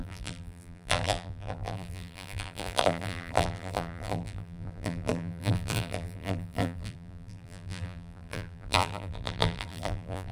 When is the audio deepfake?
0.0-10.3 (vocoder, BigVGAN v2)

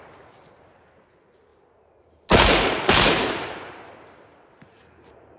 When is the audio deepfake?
none

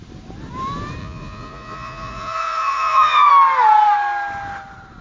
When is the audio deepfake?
1.0-3.3 (vocoder, Vocos)